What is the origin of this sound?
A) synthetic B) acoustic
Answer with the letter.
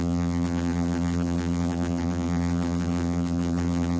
A